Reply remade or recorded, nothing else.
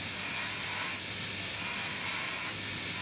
recorded